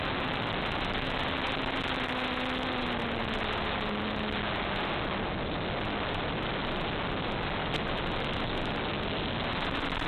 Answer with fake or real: real